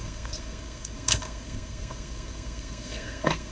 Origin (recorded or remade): remade